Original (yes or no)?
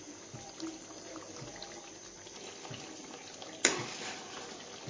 yes